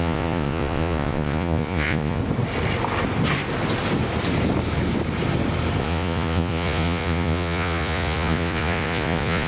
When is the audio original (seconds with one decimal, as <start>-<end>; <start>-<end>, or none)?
2.2-5.8